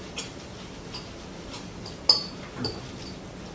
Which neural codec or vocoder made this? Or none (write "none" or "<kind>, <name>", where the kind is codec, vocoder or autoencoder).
none